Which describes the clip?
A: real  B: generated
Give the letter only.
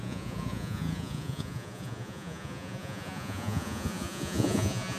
B